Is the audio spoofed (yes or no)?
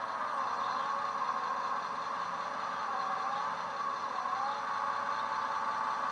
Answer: no